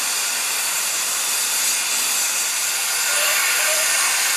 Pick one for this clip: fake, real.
fake